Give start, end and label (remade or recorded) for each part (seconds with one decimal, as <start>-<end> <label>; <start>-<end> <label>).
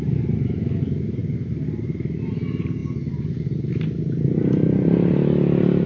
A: 0.0-5.9 recorded